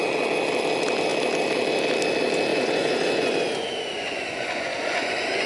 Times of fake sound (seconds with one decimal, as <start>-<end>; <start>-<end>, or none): 2.5-5.5